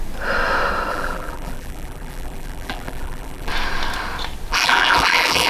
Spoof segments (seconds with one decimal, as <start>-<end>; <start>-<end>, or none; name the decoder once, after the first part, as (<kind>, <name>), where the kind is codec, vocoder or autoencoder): 0.9-3.5 (vocoder, BigVGAN v2); 4.5-5.5